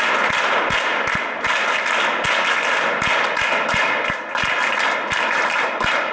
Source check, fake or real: real